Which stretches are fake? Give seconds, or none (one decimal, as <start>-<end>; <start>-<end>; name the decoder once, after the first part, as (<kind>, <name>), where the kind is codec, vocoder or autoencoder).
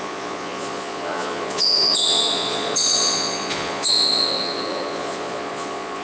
0.0-6.0 (vocoder, Vocos)